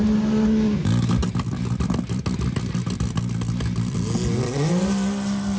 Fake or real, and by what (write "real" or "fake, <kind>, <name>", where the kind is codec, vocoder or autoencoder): real